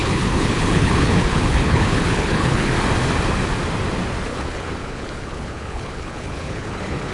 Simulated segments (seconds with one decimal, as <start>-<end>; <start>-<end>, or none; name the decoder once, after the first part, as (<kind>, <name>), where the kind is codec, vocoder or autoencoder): 0.0-2.7 (codec, HILCodec); 4.3-7.1